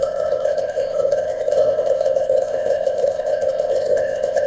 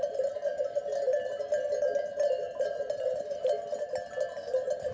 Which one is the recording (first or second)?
second